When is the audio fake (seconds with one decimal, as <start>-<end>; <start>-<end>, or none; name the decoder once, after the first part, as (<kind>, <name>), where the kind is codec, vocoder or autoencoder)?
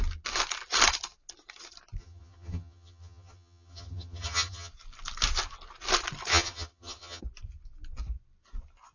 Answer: 2.0-4.7 (vocoder, HiFi-GAN); 6.3-7.2